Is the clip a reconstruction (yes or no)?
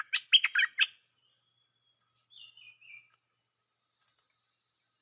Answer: no